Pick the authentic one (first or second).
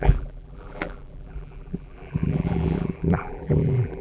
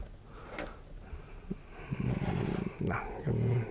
second